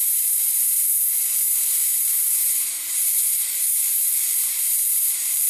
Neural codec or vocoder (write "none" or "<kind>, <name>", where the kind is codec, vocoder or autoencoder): vocoder, BigVGAN v2